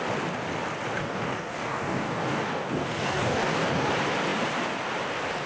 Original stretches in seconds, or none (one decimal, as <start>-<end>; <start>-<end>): 0.0-1.0; 3.9-5.5